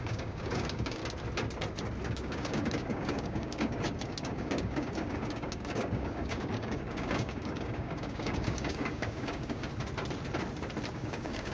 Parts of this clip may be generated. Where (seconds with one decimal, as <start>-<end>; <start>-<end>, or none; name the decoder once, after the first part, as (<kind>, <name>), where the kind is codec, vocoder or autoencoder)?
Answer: 0.0-1.0 (codec, DAC); 2.1-9.7; 10.9-11.5